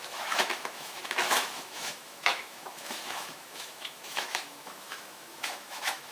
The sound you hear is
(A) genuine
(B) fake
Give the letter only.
B